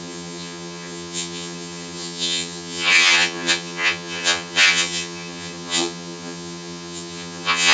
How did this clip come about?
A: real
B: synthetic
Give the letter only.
B